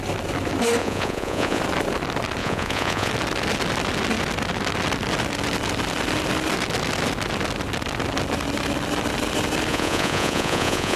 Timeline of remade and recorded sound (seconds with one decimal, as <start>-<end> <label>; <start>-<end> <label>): 0.0-0.8 recorded; 0.8-1.6 remade; 1.6-2.4 recorded; 2.4-3.1 remade; 3.1-9.7 recorded; 9.7-11.0 remade